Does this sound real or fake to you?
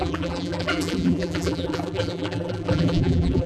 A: fake